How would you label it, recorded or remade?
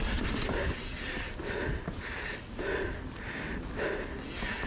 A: recorded